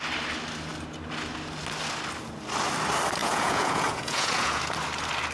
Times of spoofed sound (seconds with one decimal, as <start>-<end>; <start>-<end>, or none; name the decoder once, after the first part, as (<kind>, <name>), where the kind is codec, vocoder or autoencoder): 3.2-4.6 (vocoder, Vocos)